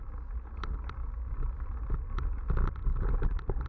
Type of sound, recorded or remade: recorded